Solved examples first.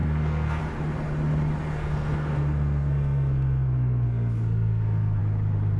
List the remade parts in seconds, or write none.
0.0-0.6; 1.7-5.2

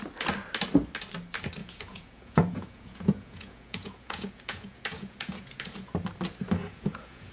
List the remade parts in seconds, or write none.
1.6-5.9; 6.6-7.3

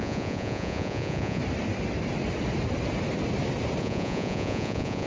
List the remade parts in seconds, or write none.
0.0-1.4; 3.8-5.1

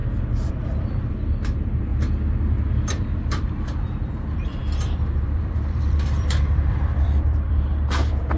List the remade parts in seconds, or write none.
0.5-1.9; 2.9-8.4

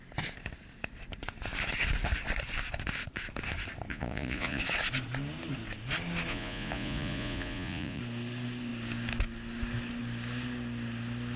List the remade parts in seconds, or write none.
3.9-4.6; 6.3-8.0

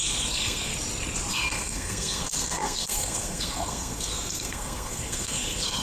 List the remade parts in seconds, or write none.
0.0-0.7; 1.3-5.8